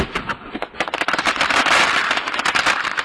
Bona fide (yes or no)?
yes